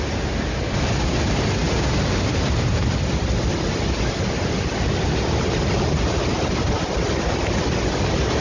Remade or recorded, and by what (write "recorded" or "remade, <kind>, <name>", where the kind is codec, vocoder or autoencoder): recorded